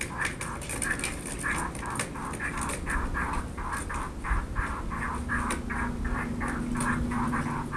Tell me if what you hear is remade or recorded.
recorded